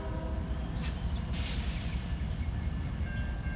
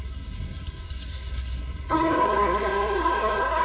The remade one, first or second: second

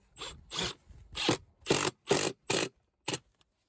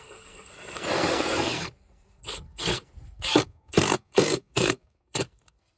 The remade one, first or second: second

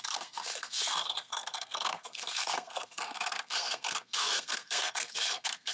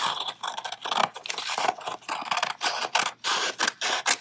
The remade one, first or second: first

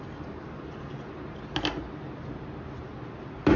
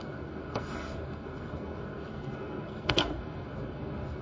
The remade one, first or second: second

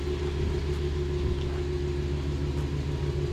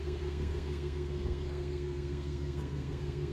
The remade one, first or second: second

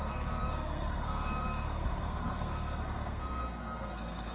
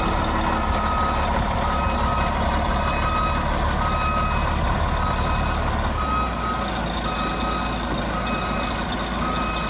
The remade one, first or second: first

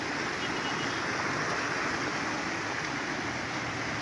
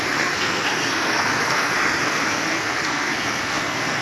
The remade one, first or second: second